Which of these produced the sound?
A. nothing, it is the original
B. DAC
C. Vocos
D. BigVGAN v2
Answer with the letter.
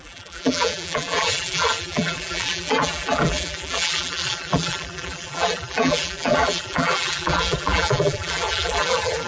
D